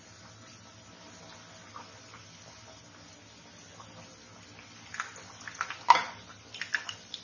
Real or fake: real